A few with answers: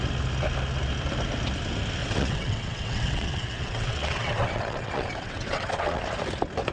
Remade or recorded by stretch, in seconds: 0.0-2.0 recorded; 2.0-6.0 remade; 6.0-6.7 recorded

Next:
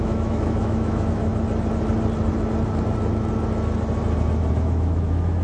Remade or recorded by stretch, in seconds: 0.0-1.3 remade; 1.3-4.5 recorded; 4.5-5.4 remade